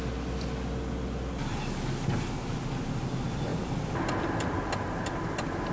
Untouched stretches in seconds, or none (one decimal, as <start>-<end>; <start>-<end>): 0.0-5.7